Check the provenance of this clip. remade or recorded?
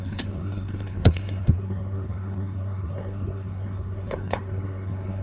remade